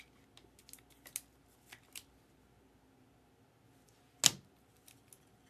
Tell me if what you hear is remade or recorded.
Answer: recorded